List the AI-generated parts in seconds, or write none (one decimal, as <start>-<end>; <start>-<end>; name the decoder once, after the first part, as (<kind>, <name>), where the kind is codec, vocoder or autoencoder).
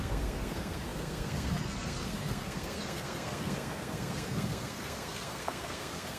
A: 0.0-6.2 (codec, SNAC)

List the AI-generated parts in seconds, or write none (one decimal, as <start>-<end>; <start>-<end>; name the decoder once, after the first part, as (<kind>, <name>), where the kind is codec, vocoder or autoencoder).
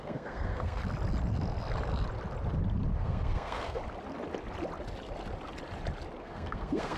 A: 0.0-0.8 (codec, SNAC); 3.0-3.8; 6.2-7.0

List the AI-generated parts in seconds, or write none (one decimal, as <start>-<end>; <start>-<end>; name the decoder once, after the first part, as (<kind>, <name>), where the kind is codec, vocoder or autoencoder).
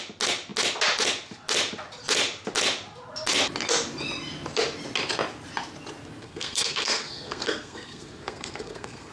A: 6.2-9.1 (codec, SNAC)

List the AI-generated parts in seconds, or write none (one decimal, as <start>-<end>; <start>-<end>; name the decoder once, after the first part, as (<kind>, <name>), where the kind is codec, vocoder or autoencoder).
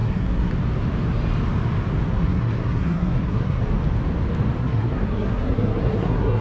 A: 0.0-0.5 (codec, SNAC); 2.1-3.6; 4.6-6.4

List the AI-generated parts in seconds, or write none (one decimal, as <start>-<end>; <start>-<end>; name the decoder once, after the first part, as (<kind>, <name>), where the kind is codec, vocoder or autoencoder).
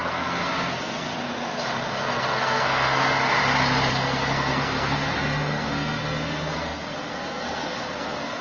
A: 0.0-1.1 (codec, SNAC); 1.9-3.4; 3.9-8.4